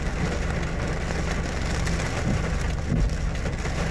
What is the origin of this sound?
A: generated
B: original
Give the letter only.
B